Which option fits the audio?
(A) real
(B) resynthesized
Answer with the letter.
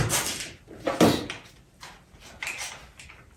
A